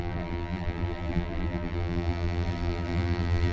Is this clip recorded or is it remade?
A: remade